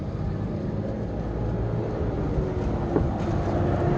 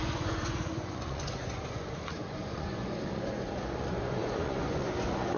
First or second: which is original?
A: first